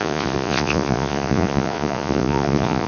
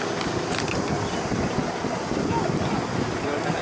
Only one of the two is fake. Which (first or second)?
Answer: first